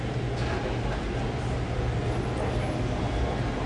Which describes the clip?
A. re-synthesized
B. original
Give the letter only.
B